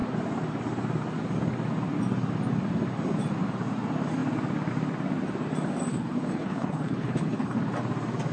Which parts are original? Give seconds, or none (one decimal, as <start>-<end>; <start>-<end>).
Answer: 0.0-5.9; 7.6-8.3